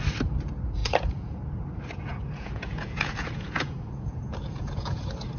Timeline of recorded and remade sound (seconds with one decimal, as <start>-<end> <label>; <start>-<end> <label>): 0.0-0.8 recorded; 0.8-1.4 remade; 1.4-2.1 recorded; 2.1-5.0 remade; 5.0-5.4 recorded